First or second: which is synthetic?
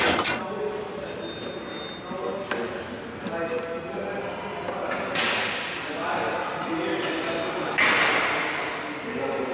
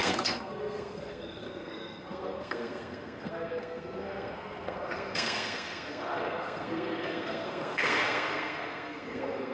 second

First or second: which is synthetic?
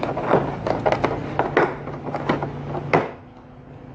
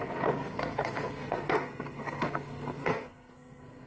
second